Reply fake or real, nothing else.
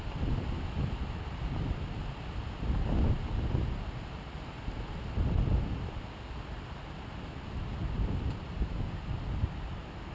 real